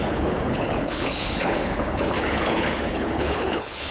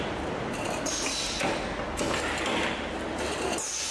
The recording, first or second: second